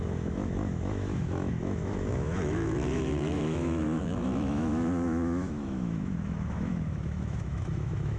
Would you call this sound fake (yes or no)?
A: yes